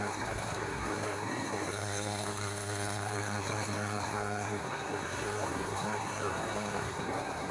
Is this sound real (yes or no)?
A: no